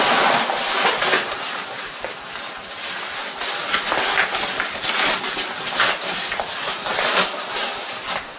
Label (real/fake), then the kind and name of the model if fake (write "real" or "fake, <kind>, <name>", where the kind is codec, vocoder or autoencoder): real